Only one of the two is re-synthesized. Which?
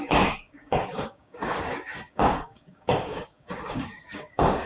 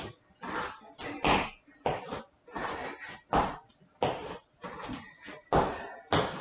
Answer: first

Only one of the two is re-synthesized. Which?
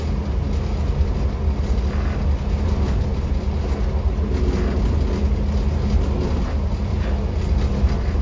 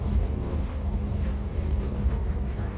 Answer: second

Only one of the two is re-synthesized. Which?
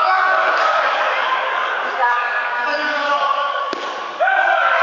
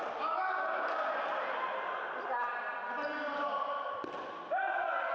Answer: first